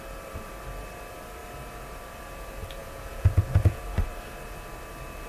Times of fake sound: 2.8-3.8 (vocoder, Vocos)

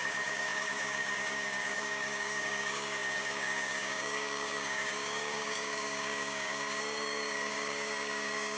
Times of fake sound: 0.0-8.6 (codec, DAC)

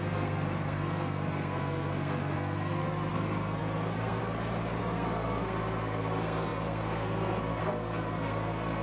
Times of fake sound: 0.0-4.2 (codec, SNAC); 4.8-8.8

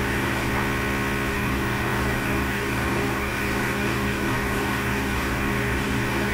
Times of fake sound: 0.0-0.5 (codec, DAC); 1.3-6.3